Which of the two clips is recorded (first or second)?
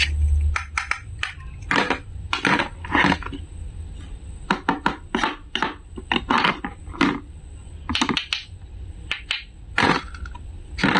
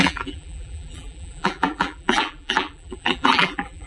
first